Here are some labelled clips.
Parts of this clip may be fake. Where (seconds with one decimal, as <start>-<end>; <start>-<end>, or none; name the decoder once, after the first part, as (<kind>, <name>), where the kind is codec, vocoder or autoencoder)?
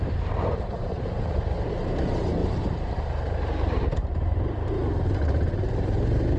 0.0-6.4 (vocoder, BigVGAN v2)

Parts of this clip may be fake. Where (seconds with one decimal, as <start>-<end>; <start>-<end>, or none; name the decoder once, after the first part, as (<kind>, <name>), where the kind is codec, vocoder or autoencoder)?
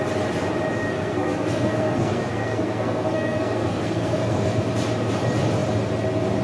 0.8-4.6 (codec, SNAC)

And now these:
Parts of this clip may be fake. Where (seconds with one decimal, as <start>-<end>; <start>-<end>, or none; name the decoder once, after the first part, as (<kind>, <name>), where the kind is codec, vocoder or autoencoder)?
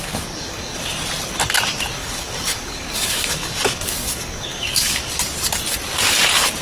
0.0-0.8 (codec, DAC); 2.0-5.1